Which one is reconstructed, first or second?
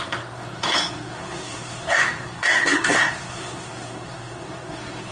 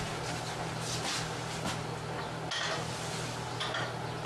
first